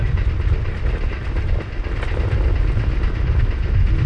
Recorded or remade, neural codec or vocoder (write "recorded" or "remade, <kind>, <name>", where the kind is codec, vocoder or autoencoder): recorded